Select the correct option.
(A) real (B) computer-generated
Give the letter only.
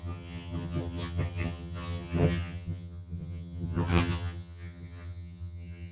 B